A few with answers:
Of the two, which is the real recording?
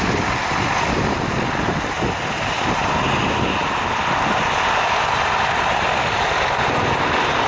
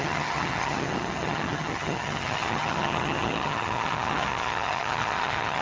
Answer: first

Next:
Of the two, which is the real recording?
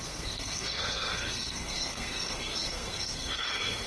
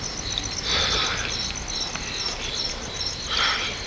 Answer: second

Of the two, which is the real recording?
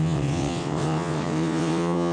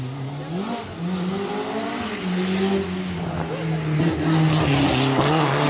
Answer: second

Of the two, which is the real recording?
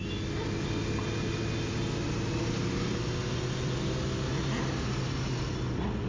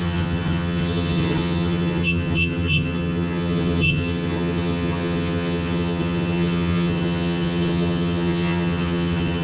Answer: first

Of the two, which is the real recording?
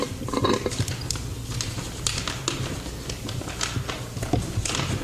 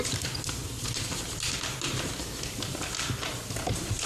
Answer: first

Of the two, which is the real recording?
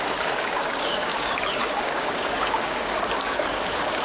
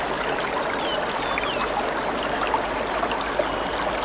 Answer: second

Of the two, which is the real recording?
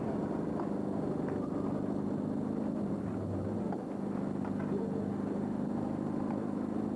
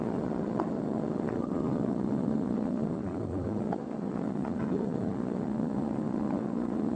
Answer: first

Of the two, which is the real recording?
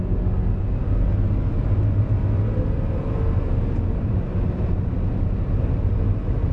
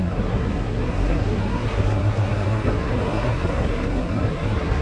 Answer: first